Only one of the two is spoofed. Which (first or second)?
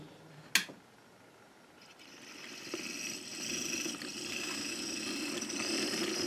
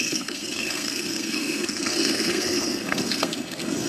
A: second